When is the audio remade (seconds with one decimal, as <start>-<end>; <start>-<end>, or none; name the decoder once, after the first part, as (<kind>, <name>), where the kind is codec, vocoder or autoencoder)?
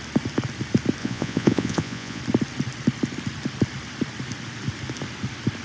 1.0-2.2 (vocoder, Vocos)